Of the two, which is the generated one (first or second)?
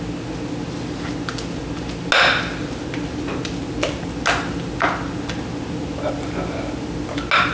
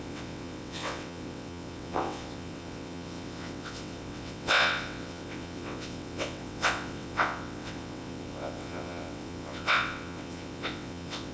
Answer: second